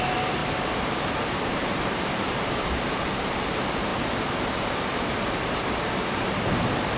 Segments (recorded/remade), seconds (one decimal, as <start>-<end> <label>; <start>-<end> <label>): 0.0-0.4 remade; 0.4-1.0 recorded; 1.0-3.9 remade; 3.9-7.0 recorded